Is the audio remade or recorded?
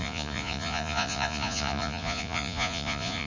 remade